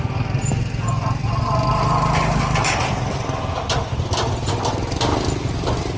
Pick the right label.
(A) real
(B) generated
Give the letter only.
A